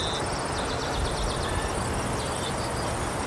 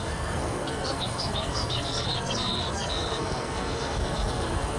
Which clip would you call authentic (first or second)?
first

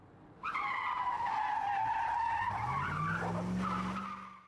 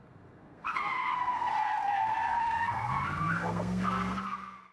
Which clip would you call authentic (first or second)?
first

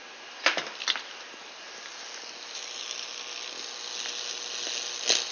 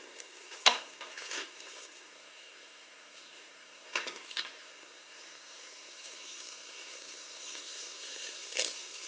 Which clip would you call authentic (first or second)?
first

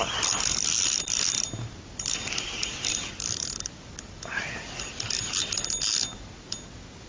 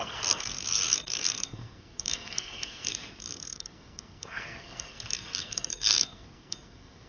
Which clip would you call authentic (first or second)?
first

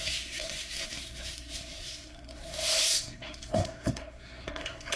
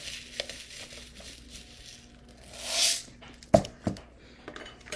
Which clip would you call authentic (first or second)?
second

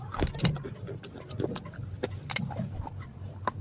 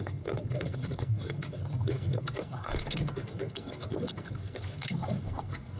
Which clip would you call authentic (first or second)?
first